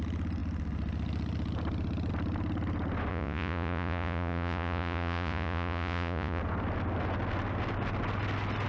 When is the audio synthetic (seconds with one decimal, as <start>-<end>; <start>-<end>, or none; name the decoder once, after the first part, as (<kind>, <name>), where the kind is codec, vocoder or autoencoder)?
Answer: 3.1-6.4 (vocoder, Vocos)